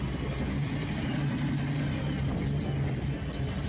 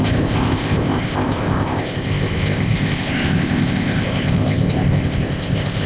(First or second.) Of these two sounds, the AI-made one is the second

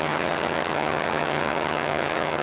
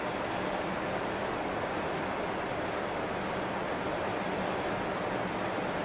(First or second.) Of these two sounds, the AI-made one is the first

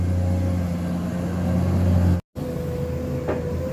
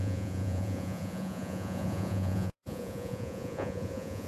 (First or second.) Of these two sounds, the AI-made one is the second